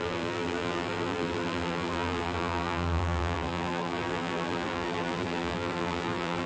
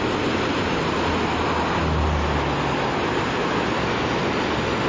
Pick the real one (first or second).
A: second